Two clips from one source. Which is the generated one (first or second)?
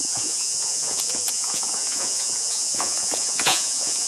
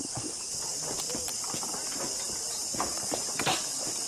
first